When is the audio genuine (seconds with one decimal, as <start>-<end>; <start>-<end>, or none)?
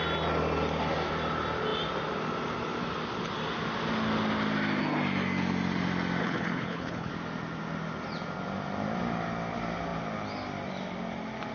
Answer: 0.0-6.2; 7.1-11.5